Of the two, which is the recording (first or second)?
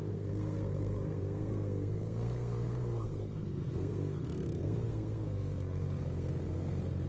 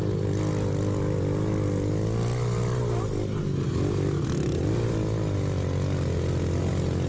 second